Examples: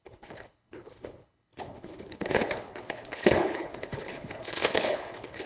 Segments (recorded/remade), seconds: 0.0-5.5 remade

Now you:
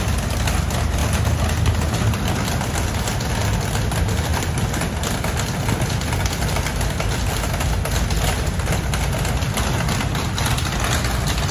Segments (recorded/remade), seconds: 0.0-11.5 recorded